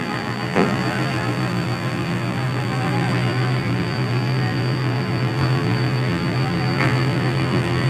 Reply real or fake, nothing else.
fake